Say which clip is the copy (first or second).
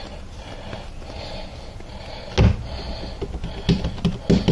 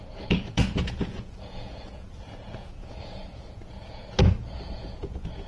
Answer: second